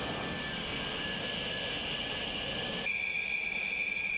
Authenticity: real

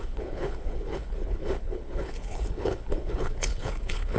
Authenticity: fake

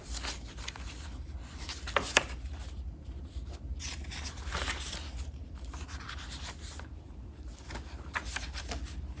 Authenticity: real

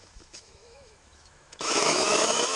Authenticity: fake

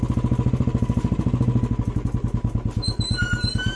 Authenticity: real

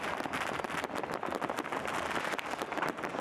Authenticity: fake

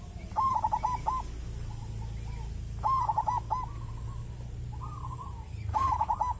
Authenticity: real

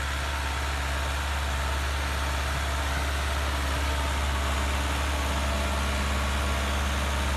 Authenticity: real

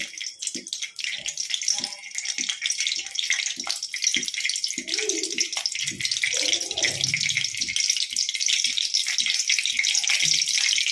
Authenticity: real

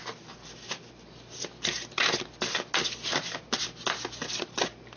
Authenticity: real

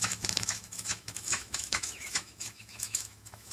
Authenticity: fake